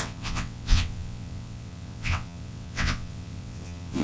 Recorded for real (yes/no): no